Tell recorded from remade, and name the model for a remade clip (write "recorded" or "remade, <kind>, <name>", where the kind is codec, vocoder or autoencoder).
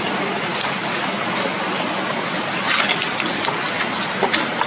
recorded